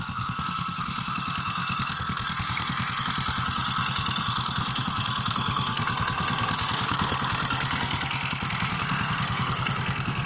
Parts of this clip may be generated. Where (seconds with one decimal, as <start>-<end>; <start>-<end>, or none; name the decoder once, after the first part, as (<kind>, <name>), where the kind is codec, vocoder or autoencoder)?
0.0-10.3 (codec, SNAC)